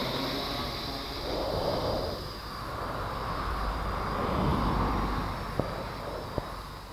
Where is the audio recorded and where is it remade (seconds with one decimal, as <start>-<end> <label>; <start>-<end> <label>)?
0.0-3.7 remade; 3.7-4.5 recorded; 4.5-5.4 remade; 5.4-6.9 recorded